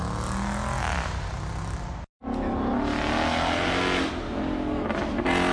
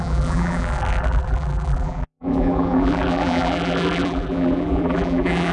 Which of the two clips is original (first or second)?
first